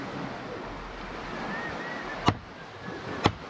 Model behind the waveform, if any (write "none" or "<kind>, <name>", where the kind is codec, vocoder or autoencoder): none